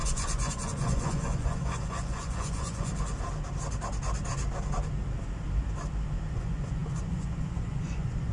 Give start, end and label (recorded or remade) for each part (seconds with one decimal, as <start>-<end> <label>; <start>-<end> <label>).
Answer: 0.0-2.9 remade; 2.9-6.3 recorded; 6.3-8.3 remade